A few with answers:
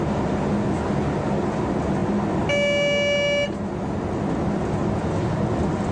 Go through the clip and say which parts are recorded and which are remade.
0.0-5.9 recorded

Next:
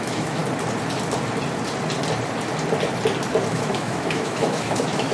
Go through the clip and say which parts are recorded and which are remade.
0.0-0.4 remade; 0.4-3.5 recorded; 3.5-5.1 remade

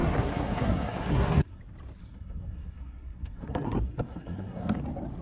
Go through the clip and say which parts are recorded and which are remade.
0.0-1.6 remade; 1.6-2.0 recorded; 2.0-4.8 remade; 4.8-5.2 recorded

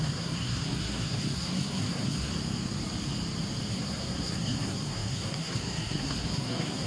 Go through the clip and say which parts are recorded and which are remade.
0.0-2.3 remade; 2.3-3.7 recorded; 3.7-6.9 remade

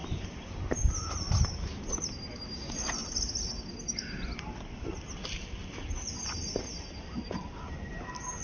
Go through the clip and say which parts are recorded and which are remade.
0.0-8.4 recorded

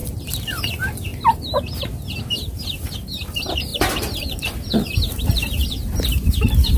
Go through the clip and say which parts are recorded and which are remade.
0.0-0.7 remade; 0.7-3.7 recorded; 3.7-6.3 remade; 6.3-6.8 recorded